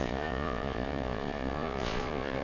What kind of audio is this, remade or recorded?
remade